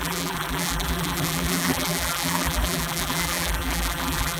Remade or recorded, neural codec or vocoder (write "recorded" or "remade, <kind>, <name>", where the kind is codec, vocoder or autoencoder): remade, vocoder, BigVGAN v2